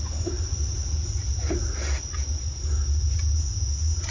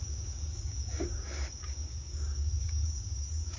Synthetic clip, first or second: second